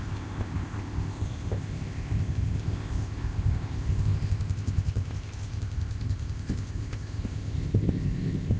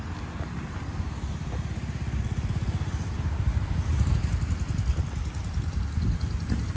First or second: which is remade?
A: first